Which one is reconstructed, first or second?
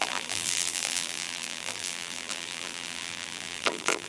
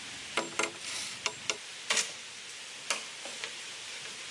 first